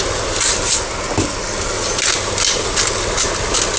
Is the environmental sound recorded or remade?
recorded